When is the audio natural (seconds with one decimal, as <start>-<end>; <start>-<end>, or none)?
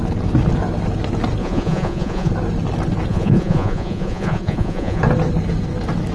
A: 0.0-1.4; 2.3-3.1; 5.0-6.1